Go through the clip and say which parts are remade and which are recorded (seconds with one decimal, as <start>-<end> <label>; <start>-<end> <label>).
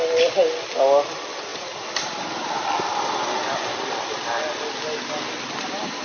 0.0-6.0 recorded